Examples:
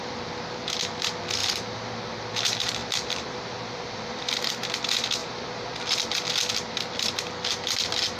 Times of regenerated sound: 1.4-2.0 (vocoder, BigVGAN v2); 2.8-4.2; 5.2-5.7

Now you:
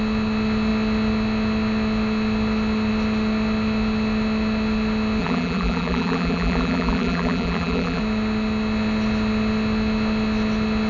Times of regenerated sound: 5.2-8.0 (vocoder, BigVGAN v2)

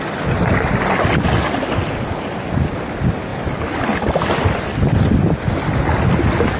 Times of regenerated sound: none